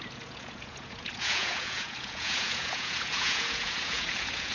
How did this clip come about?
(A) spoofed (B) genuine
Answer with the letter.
A